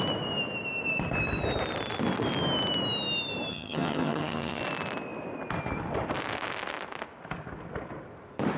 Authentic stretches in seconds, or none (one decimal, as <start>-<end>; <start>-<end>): 0.0-3.5; 4.6-8.6